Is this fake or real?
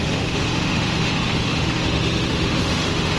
fake